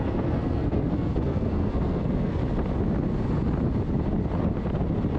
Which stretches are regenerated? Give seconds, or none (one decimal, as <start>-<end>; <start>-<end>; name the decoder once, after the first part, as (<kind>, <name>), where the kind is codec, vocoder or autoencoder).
0.0-2.4 (codec, SNAC)